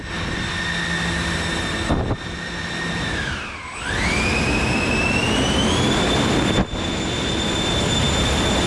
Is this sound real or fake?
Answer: real